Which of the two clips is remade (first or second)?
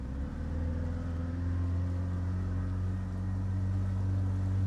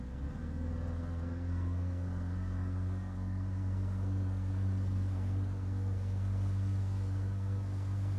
second